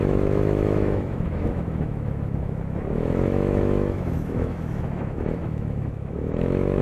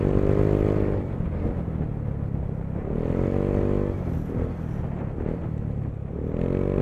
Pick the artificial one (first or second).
first